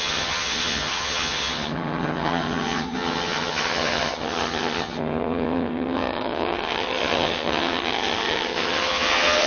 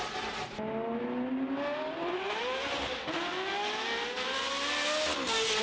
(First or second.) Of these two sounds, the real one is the second